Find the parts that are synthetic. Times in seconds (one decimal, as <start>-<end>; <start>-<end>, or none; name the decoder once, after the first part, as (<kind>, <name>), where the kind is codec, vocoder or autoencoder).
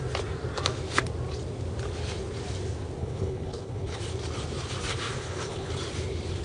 3.0-4.0 (codec, HILCodec); 4.9-5.7